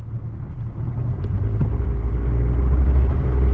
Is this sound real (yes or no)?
yes